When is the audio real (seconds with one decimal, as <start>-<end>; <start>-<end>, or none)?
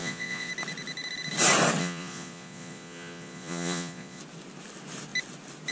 0.5-1.8; 4.2-5.7